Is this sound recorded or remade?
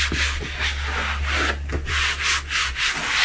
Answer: recorded